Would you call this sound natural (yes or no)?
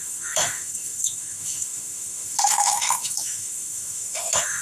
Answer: no